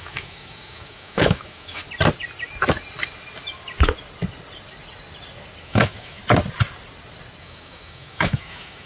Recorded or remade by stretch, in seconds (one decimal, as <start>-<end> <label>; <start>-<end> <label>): 0.0-1.8 remade; 1.8-5.6 recorded; 5.6-6.2 remade; 6.2-7.4 recorded; 7.4-8.9 remade